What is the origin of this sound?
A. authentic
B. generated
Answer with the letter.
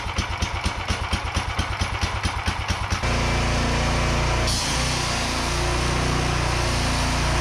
A